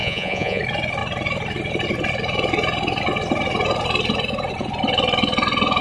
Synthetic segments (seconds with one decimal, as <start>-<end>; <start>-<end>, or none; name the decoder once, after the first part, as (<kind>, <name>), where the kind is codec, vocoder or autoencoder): 0.0-0.6 (vocoder, Vocos)